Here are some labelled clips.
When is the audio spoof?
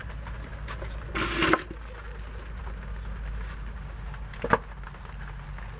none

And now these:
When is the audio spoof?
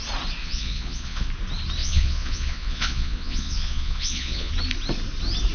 0.4-1.3 (vocoder, Vocos); 1.8-4.5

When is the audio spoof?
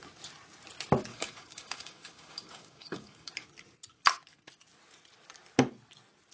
1.1-3.3 (codec, DAC)